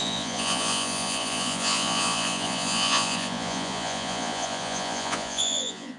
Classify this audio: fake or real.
fake